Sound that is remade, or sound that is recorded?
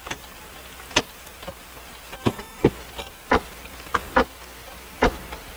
recorded